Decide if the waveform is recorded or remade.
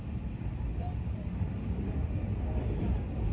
remade